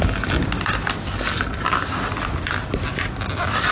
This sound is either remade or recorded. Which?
recorded